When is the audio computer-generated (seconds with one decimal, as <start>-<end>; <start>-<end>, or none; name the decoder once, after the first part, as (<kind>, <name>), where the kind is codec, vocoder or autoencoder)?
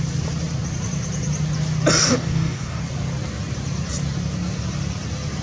2.0-2.8 (codec, DAC)